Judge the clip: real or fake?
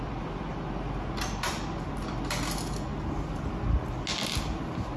real